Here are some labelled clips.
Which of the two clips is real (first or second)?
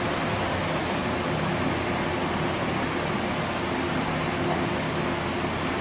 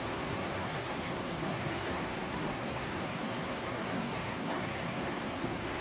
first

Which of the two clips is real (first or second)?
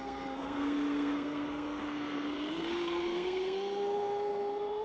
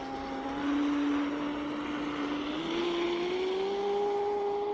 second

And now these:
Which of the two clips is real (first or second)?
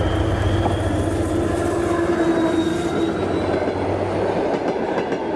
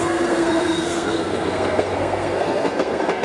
first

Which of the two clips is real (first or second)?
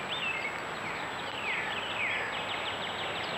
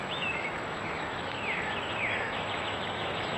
first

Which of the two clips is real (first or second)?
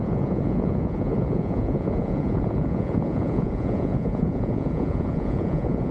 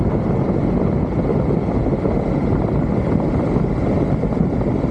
second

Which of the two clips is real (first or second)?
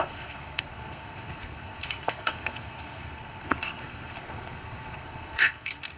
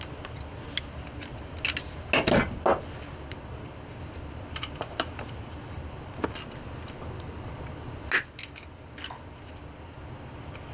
second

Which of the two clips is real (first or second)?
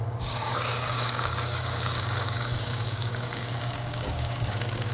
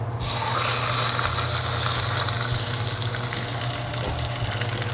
second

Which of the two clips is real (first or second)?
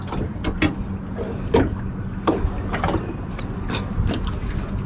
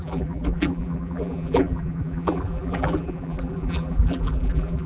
first